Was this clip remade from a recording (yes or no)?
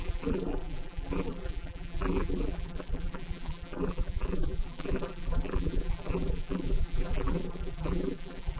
yes